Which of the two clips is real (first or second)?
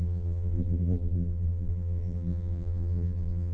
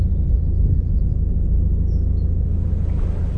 second